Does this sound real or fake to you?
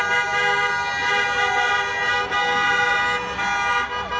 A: real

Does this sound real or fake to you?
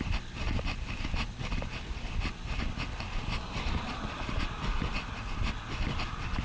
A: real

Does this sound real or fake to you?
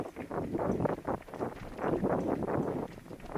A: real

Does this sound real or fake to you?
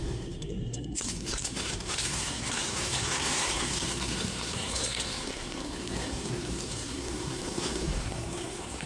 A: fake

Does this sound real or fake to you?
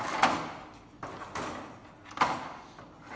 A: real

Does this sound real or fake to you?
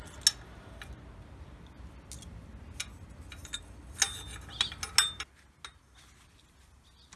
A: real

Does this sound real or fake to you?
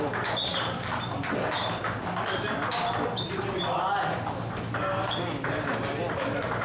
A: real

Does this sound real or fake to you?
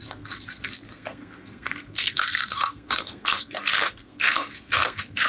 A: fake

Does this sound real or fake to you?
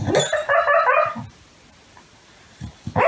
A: real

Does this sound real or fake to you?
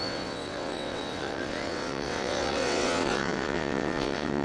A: fake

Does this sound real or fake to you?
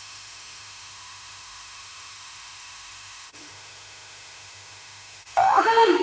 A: fake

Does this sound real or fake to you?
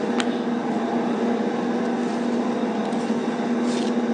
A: real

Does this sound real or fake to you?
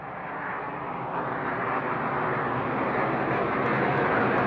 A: real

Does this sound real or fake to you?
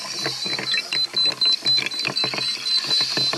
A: real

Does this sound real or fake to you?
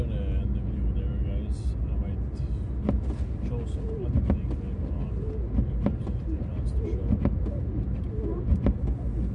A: real